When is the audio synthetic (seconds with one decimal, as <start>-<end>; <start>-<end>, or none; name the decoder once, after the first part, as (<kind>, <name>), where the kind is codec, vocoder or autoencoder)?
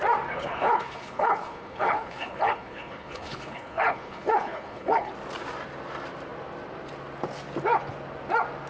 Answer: 0.4-5.1 (codec, HILCodec)